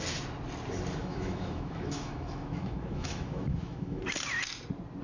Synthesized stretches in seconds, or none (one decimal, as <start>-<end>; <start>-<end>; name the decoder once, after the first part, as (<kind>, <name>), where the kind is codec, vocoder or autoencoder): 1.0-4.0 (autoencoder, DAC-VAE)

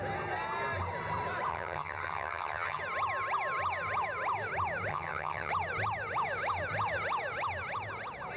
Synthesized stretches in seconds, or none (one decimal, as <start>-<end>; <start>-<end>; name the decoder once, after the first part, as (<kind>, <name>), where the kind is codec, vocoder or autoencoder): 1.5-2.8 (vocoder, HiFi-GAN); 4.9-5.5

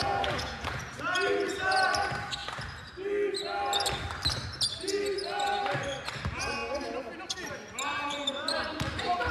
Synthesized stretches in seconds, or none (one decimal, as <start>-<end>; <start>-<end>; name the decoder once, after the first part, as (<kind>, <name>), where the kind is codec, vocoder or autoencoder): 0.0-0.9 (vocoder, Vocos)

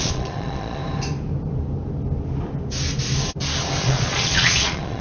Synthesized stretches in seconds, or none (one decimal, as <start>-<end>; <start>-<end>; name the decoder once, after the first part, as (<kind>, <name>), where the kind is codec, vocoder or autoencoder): 0.0-0.8 (vocoder, Vocos); 3.8-5.0

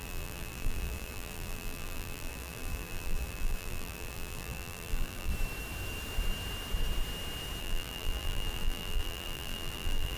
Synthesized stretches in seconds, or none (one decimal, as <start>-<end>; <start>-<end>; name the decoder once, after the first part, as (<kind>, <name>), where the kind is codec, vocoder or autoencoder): 0.0-5.3 (vocoder, BigVGAN v2); 7.6-10.2

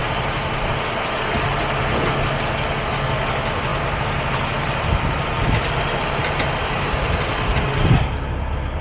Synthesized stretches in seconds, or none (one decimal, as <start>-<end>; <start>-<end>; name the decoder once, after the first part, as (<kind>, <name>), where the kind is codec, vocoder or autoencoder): 0.0-0.7 (vocoder, BigVGAN v2); 3.7-7.2